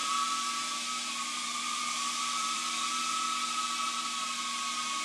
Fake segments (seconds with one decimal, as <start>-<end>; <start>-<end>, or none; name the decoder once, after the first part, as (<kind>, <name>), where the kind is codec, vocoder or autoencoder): 0.0-3.0 (vocoder, BigVGAN v2)